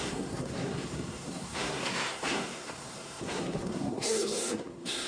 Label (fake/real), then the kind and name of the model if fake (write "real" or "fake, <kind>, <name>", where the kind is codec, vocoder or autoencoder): fake, codec, SNAC